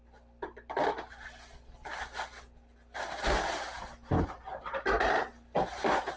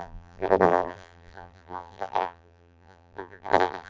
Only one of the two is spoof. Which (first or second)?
second